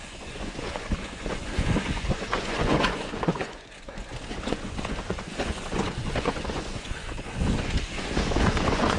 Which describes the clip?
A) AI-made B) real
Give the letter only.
A